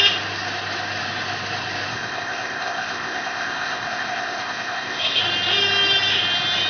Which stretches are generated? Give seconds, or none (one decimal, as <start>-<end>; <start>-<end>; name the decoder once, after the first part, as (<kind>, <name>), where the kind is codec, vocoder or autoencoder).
1.9-5.2 (codec, ZipCodec)